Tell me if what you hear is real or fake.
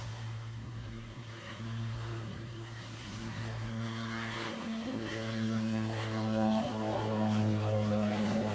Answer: fake